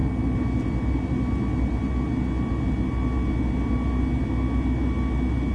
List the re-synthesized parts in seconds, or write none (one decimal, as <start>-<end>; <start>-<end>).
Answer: none